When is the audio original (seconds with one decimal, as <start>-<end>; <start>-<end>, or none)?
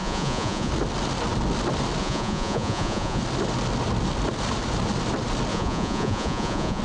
0.7-2.0; 3.2-5.5